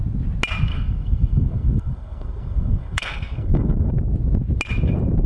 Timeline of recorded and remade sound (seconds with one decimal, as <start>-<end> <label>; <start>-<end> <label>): 0.0-0.7 recorded; 0.7-3.9 remade; 3.9-5.3 recorded